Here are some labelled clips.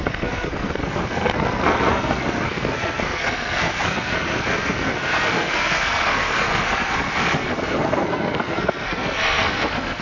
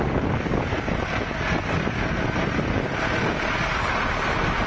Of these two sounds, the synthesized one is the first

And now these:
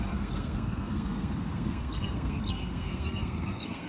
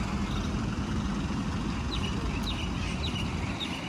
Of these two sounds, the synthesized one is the first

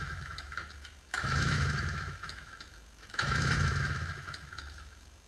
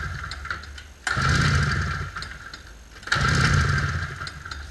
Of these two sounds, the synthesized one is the first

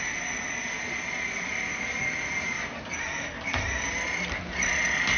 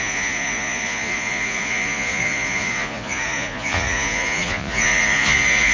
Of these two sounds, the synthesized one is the second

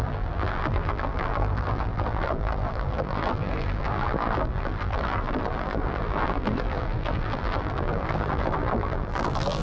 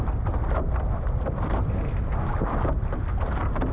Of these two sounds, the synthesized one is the first